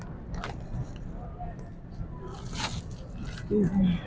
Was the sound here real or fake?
real